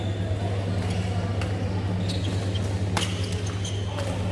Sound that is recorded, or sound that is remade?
recorded